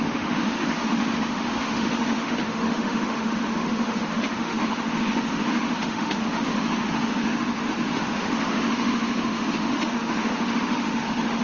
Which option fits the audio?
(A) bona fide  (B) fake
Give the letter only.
B